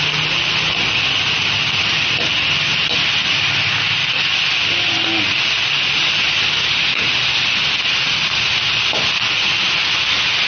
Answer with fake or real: real